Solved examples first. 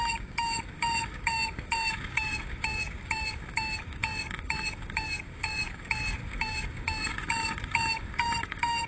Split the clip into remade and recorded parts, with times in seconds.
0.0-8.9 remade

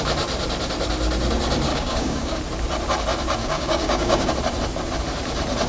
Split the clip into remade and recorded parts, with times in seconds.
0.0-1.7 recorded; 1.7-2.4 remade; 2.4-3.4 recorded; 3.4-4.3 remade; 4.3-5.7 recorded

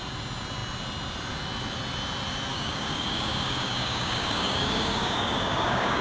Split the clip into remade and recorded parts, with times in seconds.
0.0-2.5 recorded; 2.5-6.0 remade

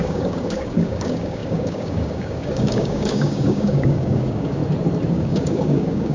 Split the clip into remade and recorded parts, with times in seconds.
0.0-4.6 remade; 4.6-5.1 recorded; 5.1-6.1 remade

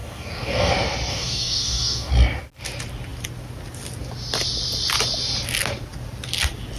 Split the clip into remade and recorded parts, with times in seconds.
0.0-0.7 remade; 0.7-1.1 recorded; 1.1-2.1 remade; 2.1-6.8 recorded

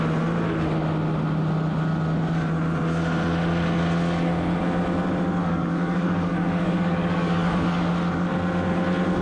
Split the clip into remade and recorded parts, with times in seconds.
0.0-5.4 recorded; 5.4-7.9 remade; 7.9-9.2 recorded

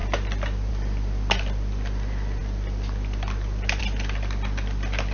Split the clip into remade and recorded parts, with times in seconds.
0.0-5.1 recorded